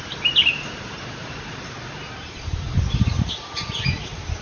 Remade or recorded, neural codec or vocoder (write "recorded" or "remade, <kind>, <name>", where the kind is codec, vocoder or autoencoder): remade, vocoder, BigVGAN v2